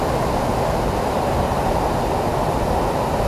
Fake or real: real